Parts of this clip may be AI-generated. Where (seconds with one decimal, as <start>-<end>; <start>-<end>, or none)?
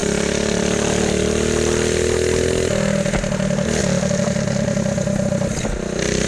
none